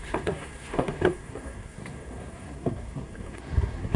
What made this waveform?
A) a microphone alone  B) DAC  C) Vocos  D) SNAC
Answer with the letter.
D